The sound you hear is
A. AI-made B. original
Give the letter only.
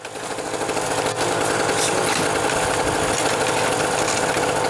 B